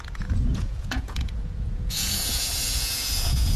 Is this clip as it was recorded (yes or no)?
no